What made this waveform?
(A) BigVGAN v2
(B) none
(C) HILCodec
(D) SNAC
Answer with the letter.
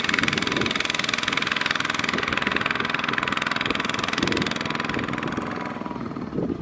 A